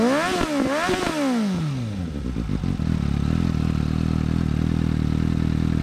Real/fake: real